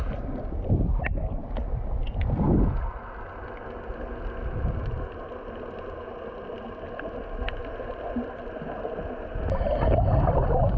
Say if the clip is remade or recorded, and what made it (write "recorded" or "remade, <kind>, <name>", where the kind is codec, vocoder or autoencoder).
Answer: recorded